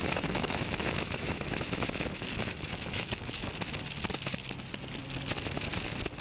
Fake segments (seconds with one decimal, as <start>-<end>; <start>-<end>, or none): 0.0-3.5